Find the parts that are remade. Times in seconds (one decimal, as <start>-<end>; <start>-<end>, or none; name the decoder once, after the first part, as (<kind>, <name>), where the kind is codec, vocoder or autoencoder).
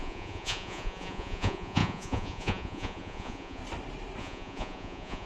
0.0-3.6 (vocoder, Vocos); 4.2-5.3